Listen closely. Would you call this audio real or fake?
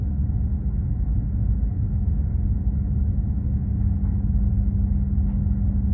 real